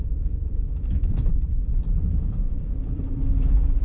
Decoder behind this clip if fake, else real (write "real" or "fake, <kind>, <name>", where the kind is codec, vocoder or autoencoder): fake, vocoder, BigVGAN v2